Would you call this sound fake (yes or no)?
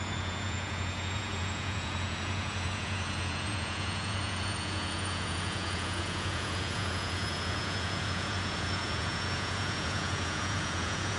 yes